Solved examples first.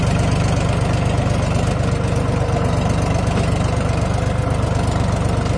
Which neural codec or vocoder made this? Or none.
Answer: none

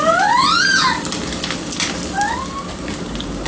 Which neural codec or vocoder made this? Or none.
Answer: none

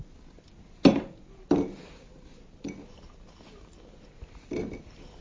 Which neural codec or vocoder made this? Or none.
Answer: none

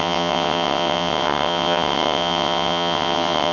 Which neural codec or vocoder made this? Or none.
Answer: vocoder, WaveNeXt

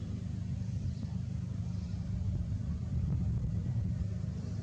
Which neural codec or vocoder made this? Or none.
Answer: vocoder, BigVGAN v2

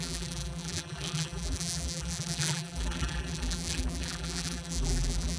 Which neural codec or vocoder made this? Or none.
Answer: vocoder, BigVGAN v2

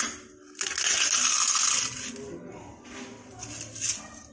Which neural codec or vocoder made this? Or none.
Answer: none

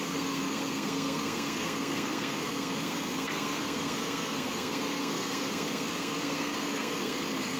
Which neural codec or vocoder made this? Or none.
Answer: codec, SNAC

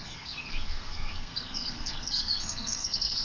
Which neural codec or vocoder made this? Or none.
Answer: codec, SNAC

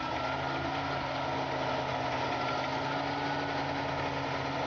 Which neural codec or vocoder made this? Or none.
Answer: none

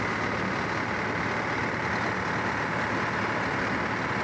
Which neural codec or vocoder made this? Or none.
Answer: none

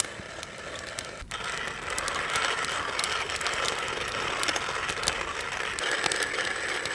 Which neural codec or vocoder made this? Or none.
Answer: none